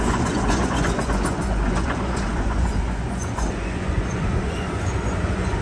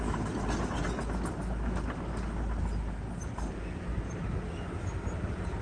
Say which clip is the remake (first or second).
first